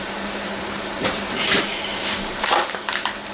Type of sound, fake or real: fake